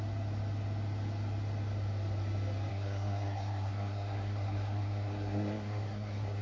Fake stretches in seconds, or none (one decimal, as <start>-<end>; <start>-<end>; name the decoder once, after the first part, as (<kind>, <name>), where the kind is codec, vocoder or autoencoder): 2.7-6.4 (codec, SNAC)